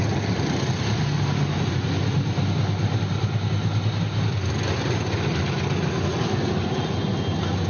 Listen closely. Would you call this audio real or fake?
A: real